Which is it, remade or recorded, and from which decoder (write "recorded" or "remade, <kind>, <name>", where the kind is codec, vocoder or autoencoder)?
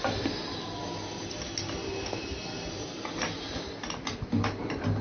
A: recorded